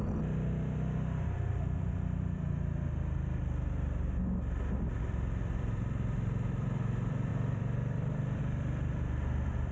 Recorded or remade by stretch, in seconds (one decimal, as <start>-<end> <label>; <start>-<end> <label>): 0.0-1.5 remade; 1.5-2.2 recorded; 2.2-9.7 remade

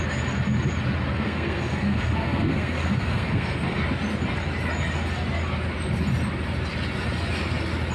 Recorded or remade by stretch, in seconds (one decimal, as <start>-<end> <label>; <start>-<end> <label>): 0.0-1.1 recorded; 1.1-3.8 remade; 3.8-7.9 recorded

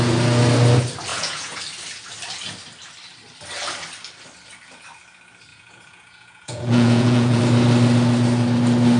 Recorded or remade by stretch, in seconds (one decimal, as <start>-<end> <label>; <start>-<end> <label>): 0.0-1.1 recorded; 1.1-1.6 remade; 1.6-5.5 recorded; 5.5-7.4 remade; 7.4-9.0 recorded